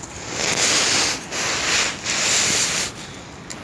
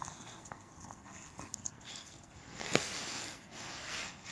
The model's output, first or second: second